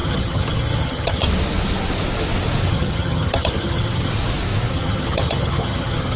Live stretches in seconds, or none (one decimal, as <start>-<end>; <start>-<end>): 1.2-2.7; 4.1-4.7